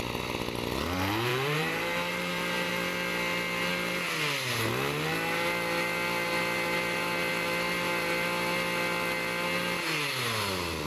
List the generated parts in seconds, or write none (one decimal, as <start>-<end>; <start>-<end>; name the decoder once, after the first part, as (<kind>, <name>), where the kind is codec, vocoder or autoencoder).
1.3-2.7 (vocoder, BigVGAN v2)